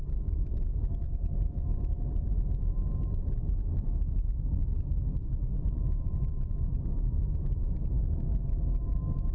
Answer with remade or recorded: remade